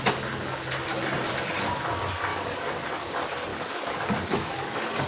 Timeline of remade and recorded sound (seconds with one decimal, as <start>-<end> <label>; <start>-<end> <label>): 0.0-2.3 recorded; 2.3-3.1 remade; 3.1-3.5 recorded; 3.5-5.1 remade